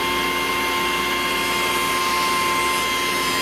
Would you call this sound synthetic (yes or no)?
no